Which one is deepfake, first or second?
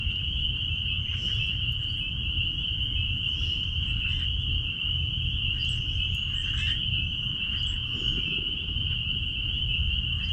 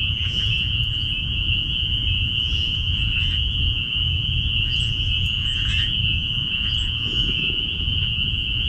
second